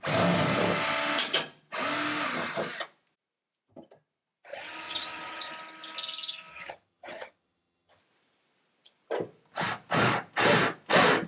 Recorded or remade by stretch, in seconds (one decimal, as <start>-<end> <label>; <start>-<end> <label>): 0.0-4.5 recorded; 4.5-5.5 remade; 5.5-6.5 recorded; 6.5-8.0 remade; 8.0-11.3 recorded

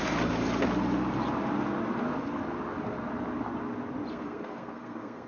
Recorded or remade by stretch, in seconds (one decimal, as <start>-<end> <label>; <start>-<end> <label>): 0.0-4.1 recorded; 4.1-5.3 remade

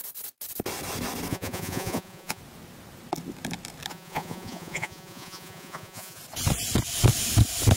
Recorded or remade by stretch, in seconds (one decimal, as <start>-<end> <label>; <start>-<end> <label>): 0.0-1.3 recorded; 1.3-2.4 remade; 2.4-3.9 recorded; 3.9-6.2 remade; 6.2-7.8 recorded

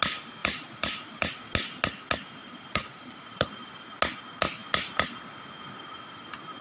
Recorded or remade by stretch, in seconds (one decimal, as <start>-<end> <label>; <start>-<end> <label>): 0.0-0.4 recorded; 0.4-1.3 remade; 1.3-2.4 recorded; 2.4-3.7 remade; 3.7-6.6 recorded

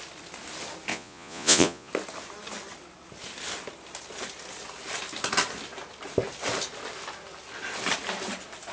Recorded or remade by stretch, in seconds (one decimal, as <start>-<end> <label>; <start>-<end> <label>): 0.0-0.9 recorded; 0.9-1.9 remade; 1.9-8.7 recorded